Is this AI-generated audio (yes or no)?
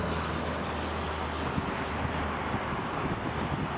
no